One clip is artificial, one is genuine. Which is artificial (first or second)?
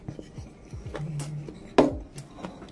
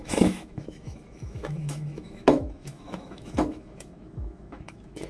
second